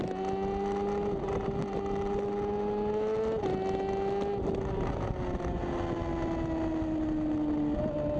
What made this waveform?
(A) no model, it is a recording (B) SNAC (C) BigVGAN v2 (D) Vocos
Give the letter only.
A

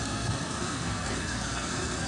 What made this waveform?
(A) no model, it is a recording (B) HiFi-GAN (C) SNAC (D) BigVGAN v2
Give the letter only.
C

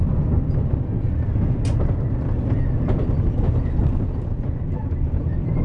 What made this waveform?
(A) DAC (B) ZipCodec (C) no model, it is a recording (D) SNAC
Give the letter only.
C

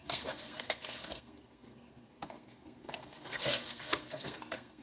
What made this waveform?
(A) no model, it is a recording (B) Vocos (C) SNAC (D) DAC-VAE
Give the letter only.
C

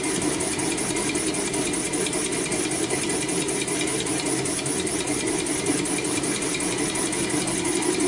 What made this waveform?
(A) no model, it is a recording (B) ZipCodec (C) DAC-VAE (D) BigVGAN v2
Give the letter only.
A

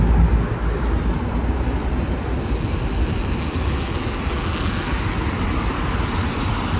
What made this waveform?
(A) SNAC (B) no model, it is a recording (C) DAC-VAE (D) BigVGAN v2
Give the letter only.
B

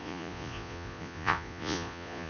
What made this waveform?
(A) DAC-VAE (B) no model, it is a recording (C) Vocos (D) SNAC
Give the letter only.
C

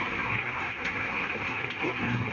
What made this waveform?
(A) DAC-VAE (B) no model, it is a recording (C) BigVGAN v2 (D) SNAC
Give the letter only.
D